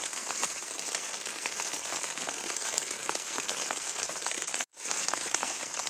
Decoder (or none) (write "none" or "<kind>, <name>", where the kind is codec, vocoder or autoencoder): codec, SNAC